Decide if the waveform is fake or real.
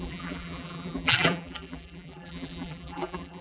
fake